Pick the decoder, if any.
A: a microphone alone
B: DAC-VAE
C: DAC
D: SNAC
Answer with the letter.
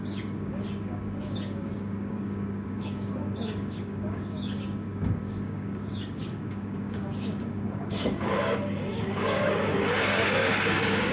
C